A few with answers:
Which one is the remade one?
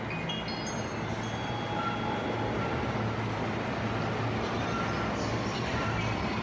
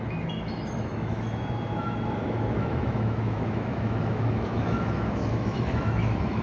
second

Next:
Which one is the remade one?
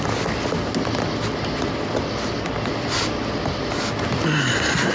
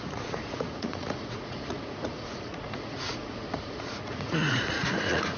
second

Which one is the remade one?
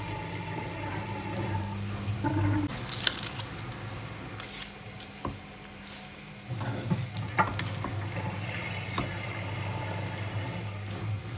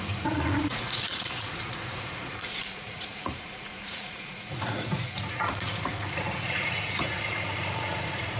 second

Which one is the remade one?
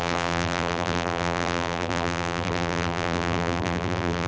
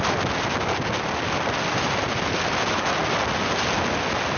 first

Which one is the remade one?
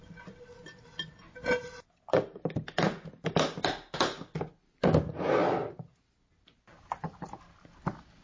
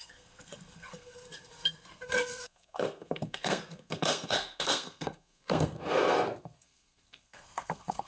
second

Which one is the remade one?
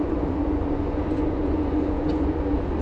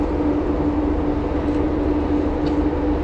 first